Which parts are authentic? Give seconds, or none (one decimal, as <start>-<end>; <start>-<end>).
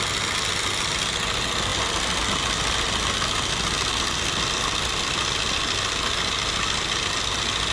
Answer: 0.0-7.7